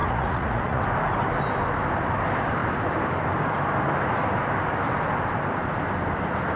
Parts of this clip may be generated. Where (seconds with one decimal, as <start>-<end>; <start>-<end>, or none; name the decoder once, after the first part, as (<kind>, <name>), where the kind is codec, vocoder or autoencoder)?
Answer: 0.0-0.8 (vocoder, Vocos)